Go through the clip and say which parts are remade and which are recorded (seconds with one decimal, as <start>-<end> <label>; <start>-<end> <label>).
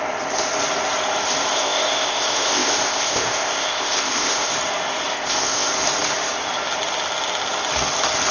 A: 0.0-1.5 recorded; 1.5-4.5 remade; 4.5-5.1 recorded; 5.1-5.7 remade; 5.7-8.3 recorded